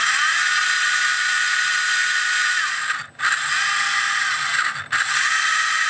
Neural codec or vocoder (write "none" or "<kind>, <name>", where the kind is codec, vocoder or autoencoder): none